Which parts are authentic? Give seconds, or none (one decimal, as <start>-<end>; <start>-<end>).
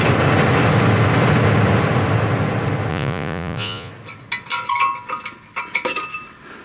0.0-2.9; 3.9-6.6